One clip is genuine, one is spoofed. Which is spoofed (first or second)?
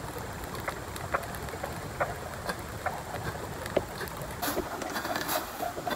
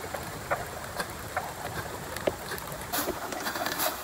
second